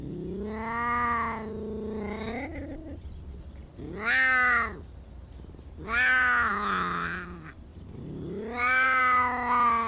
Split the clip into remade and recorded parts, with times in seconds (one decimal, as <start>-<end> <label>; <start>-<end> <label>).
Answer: 0.0-7.7 recorded; 7.7-9.0 remade; 9.0-9.9 recorded